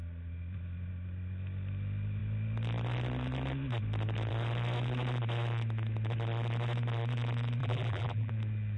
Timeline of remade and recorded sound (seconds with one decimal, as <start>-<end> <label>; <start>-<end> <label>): 0.0-7.6 recorded; 7.6-8.3 remade; 8.3-8.8 recorded